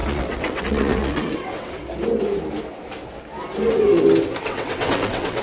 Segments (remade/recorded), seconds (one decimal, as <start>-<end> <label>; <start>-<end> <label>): 0.0-1.8 remade; 1.8-4.4 recorded; 4.4-5.4 remade